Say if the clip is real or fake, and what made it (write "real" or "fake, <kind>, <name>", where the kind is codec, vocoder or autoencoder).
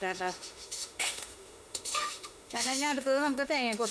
fake, autoencoder, DAC-VAE